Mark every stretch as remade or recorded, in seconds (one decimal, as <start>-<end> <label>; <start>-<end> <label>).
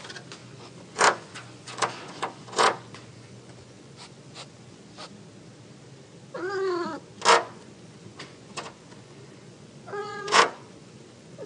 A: 0.0-0.4 recorded; 0.4-4.8 remade; 4.8-7.3 recorded; 7.3-11.5 remade